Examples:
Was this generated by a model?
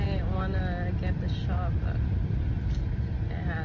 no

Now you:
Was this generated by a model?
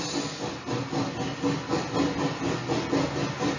no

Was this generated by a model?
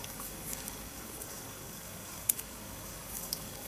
yes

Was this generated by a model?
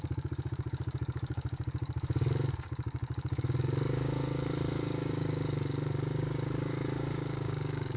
yes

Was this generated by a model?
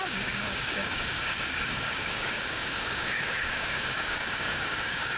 yes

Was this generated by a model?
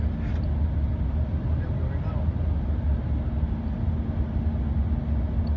no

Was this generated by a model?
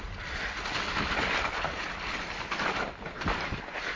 no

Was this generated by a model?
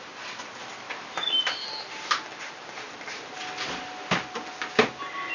no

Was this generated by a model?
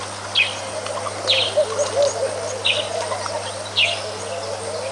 no